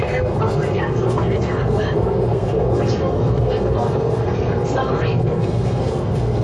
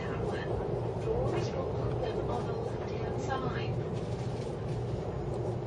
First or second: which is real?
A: second